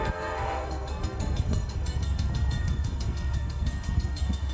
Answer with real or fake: fake